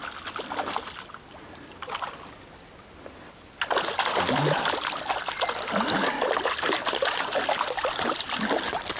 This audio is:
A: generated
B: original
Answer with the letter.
B